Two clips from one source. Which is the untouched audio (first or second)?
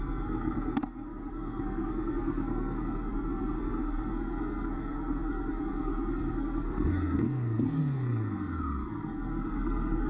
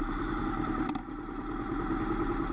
second